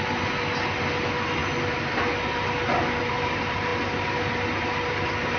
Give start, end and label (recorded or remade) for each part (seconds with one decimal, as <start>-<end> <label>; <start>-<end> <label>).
0.0-5.4 recorded